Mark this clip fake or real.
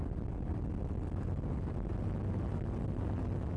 real